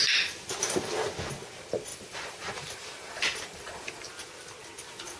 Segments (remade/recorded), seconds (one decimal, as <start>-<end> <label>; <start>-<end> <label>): 0.0-1.9 recorded; 1.9-4.1 remade; 4.1-5.2 recorded